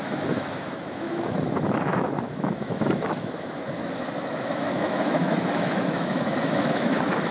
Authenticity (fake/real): fake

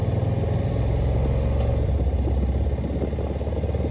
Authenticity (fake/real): real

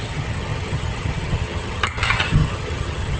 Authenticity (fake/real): fake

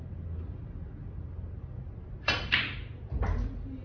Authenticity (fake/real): real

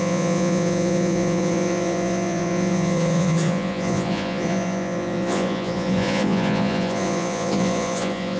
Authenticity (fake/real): fake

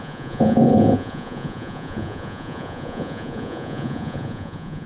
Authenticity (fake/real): fake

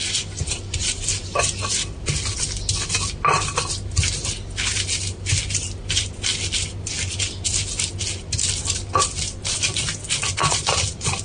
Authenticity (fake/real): real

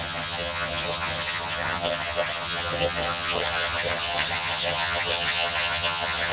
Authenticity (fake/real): fake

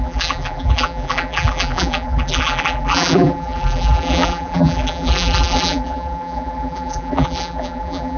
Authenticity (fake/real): fake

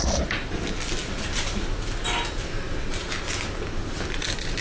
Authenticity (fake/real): real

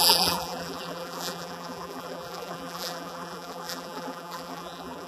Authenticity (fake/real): fake